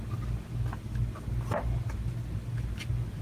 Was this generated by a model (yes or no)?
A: no